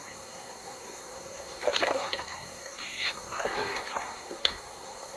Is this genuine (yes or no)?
no